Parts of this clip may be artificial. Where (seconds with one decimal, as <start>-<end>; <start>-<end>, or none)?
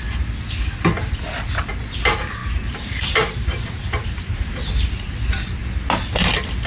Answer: 2.4-4.7